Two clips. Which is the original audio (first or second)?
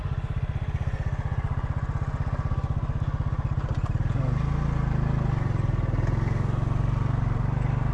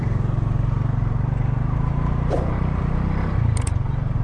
first